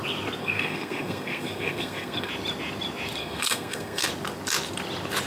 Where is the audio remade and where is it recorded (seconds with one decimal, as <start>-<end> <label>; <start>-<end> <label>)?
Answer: 0.0-0.4 recorded; 0.4-2.3 remade; 2.3-3.2 recorded; 3.2-4.1 remade; 4.1-5.3 recorded